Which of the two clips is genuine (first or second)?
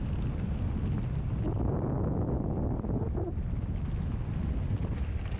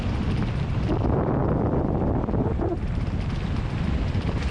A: first